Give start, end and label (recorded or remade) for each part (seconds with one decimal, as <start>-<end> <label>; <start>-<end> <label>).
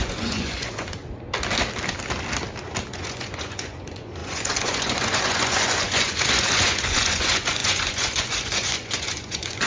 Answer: 0.0-1.0 remade; 1.0-2.9 recorded; 2.9-9.7 remade